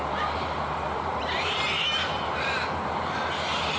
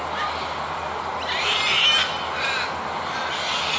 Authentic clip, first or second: second